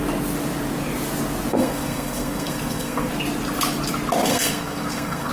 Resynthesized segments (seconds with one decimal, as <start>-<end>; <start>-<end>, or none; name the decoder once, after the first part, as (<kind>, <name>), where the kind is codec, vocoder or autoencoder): 1.5-3.1 (codec, SNAC); 4.3-5.3